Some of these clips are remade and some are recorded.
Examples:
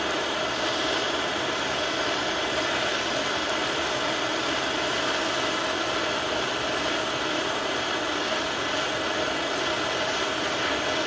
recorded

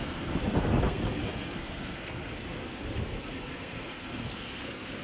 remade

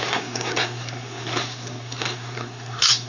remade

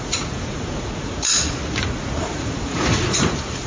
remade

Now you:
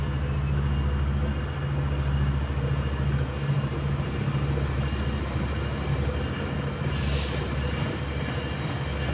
recorded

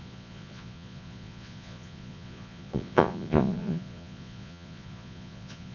remade